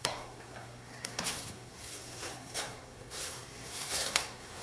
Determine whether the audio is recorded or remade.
remade